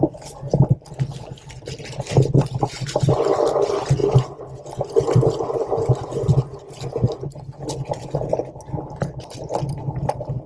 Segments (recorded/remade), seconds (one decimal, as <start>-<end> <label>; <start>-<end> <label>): 0.0-10.5 recorded